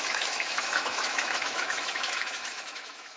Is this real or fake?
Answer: fake